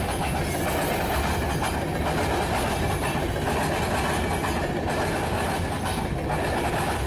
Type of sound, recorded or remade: recorded